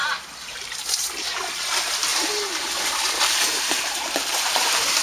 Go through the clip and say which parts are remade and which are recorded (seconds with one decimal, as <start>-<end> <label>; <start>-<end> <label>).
0.0-1.3 remade; 1.3-2.1 recorded; 2.1-5.0 remade